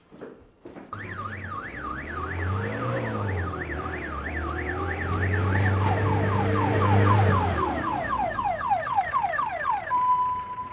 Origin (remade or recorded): remade